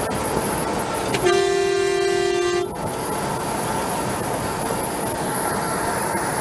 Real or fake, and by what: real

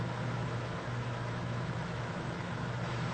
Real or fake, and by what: fake, autoencoder, DAC-VAE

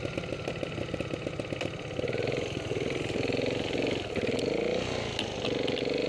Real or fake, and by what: real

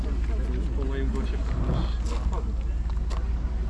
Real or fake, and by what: real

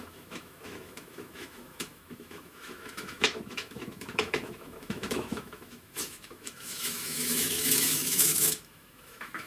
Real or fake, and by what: fake, autoencoder, DAC-VAE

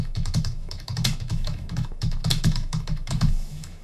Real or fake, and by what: fake, autoencoder, DAC-VAE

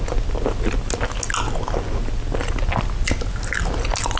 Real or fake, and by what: real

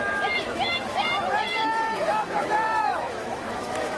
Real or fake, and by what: fake, autoencoder, DAC-VAE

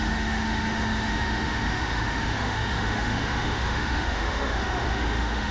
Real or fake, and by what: fake, autoencoder, DAC-VAE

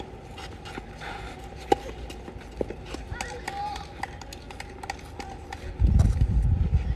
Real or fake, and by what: real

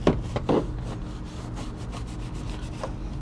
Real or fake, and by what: real